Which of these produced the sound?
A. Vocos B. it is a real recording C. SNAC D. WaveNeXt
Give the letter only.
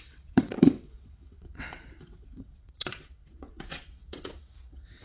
D